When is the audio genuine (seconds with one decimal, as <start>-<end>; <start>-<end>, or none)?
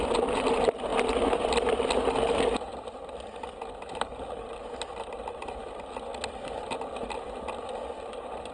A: 0.0-8.5